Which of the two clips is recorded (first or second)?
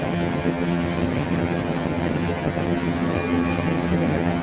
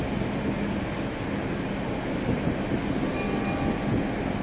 second